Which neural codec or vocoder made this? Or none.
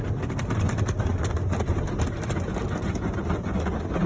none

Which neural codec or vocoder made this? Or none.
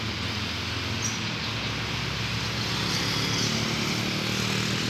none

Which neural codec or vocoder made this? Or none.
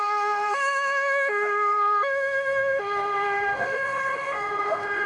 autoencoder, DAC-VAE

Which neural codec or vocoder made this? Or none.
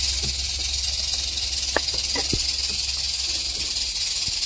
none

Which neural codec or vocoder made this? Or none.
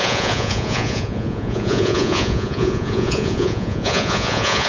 vocoder, Vocos